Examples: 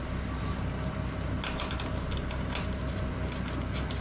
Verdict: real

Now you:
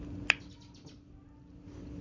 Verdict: real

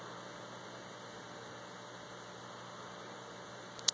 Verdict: real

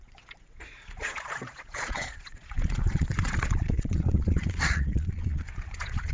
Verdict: fake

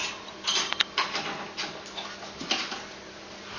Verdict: real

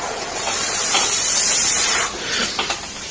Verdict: fake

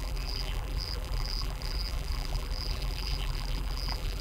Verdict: fake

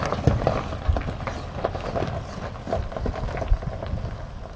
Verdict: real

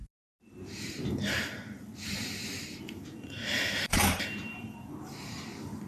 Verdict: fake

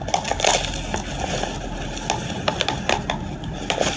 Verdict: real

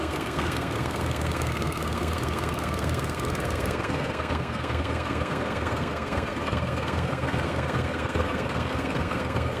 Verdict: fake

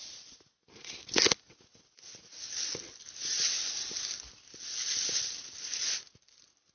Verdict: real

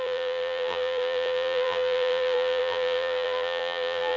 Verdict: fake